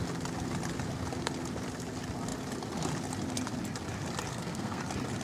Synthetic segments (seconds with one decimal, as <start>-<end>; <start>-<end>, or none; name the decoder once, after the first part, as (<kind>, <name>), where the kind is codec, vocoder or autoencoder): 4.3-4.8 (codec, SNAC)